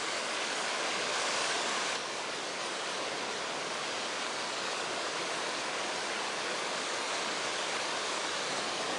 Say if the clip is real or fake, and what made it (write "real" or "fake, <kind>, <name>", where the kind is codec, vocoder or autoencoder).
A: fake, codec, DAC